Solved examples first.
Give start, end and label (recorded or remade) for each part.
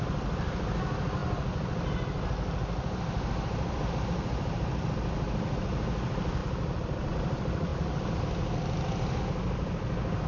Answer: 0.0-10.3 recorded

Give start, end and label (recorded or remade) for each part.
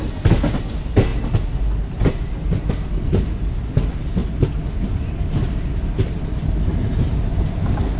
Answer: 0.0-8.0 recorded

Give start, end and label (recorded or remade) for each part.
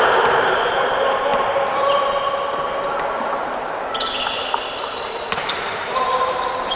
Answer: 0.0-1.3 remade; 1.3-4.8 recorded; 4.8-6.8 remade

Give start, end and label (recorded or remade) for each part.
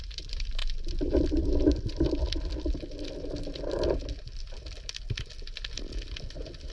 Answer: 0.0-6.7 remade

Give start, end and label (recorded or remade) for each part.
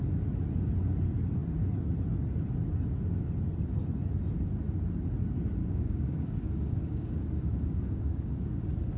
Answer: 0.0-5.6 recorded; 5.6-8.6 remade; 8.6-9.0 recorded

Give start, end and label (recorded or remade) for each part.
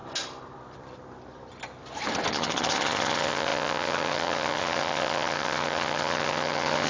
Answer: 0.0-2.3 recorded; 2.3-6.9 remade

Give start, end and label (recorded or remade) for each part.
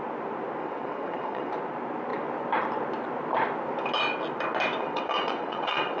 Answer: 0.0-0.6 recorded; 0.6-1.5 remade; 1.5-4.8 recorded; 4.8-6.0 remade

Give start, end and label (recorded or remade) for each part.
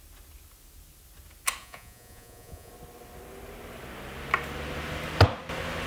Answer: 0.0-1.6 recorded; 1.6-2.7 remade; 2.7-5.9 recorded